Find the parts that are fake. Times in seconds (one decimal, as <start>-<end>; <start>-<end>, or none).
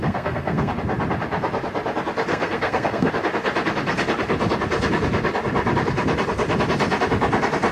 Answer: 0.0-0.7; 2.3-3.1